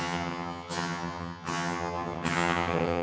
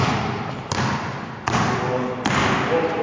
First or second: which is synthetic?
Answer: first